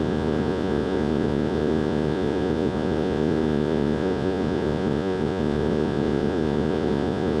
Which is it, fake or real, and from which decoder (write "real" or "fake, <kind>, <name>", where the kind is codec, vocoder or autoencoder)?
fake, vocoder, Vocos